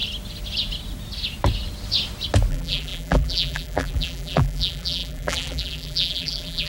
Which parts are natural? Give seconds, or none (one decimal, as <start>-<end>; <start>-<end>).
0.0-2.5

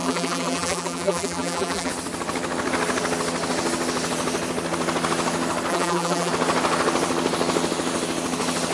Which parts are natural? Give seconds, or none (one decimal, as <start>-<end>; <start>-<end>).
1.9-5.7; 6.3-8.7

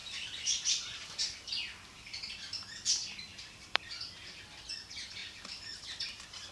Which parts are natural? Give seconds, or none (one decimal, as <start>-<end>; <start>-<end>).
1.5-3.3; 4.2-6.5

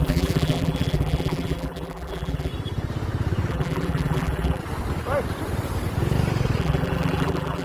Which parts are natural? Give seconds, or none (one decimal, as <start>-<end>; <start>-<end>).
2.5-3.5; 4.6-6.6

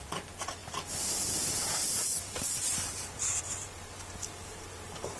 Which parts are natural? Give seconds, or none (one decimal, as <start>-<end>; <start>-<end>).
none

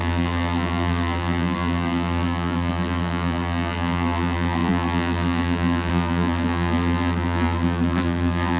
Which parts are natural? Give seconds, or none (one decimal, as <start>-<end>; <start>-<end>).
none